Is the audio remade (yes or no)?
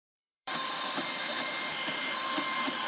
yes